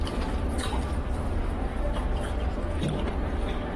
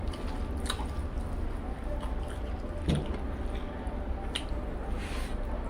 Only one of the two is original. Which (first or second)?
second